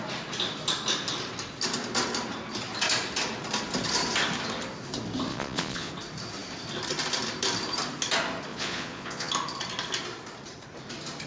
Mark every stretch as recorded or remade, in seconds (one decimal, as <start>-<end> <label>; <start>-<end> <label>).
0.0-5.3 recorded; 5.3-5.9 remade; 5.9-8.5 recorded; 8.5-9.3 remade; 9.3-11.3 recorded